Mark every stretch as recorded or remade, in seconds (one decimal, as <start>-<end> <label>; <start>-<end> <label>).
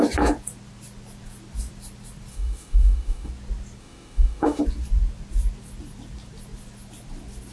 0.0-2.3 recorded; 2.3-3.3 remade; 3.3-3.8 recorded; 3.8-4.6 remade; 4.6-7.5 recorded